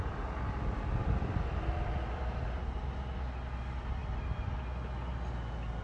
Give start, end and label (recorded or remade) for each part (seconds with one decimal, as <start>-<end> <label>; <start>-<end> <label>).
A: 0.0-1.0 recorded; 1.0-2.6 remade; 2.6-5.8 recorded